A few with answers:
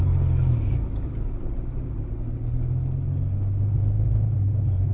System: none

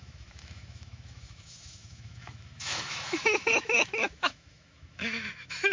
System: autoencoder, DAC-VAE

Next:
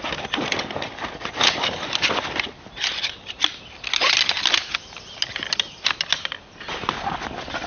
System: none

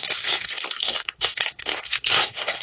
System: codec, SNAC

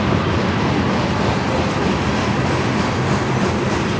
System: none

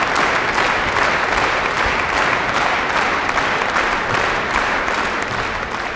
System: none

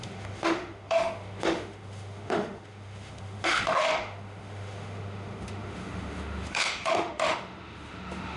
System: autoencoder, DAC-VAE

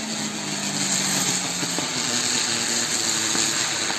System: none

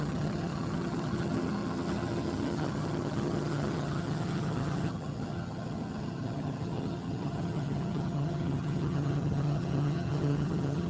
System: vocoder, HiFi-GAN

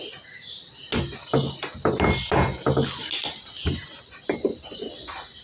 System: none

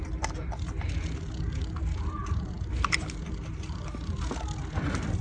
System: none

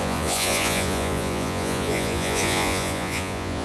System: vocoder, Vocos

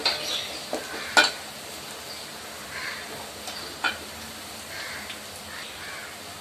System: none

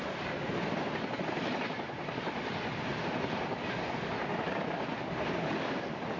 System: none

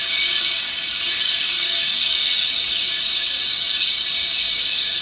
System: codec, DAC